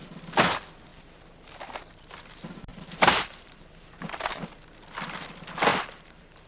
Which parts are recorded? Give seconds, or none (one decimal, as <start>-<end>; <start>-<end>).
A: 0.0-0.9; 1.8-2.7; 4.5-5.7